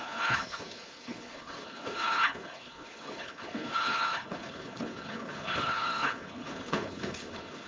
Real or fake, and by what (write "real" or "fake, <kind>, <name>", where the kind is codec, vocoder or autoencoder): fake, codec, HILCodec